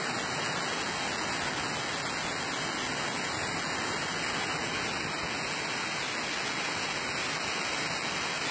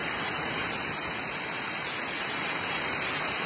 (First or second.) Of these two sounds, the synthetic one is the second